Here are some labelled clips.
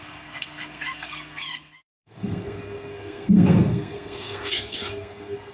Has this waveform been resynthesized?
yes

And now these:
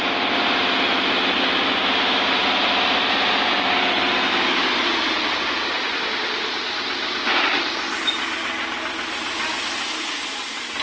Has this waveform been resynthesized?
no